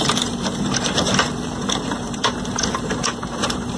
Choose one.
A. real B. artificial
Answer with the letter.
B